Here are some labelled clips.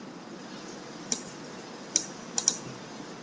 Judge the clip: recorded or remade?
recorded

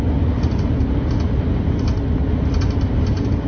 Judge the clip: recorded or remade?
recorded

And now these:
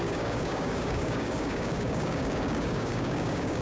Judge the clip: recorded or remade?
remade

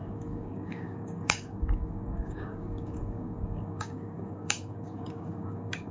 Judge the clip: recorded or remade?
remade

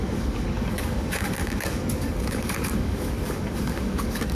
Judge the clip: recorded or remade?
remade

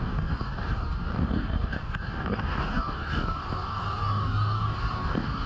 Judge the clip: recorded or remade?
remade